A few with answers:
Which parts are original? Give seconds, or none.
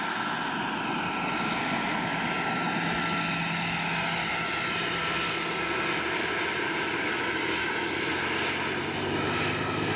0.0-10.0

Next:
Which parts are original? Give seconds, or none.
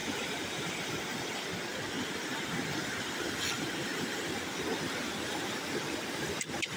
1.2-6.8